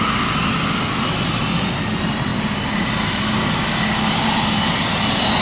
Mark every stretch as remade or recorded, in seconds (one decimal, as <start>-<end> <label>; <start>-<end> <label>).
0.0-5.4 recorded